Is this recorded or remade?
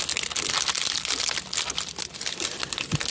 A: recorded